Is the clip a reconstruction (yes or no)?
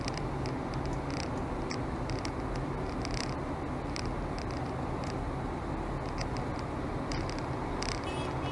no